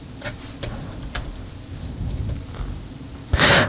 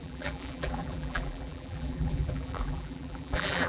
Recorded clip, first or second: first